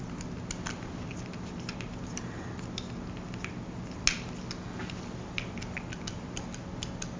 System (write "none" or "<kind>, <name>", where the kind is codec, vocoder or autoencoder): none